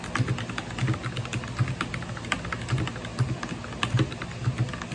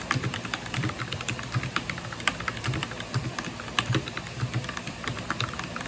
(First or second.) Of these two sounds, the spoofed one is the second